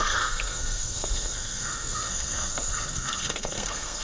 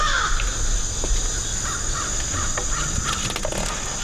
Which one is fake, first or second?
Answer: first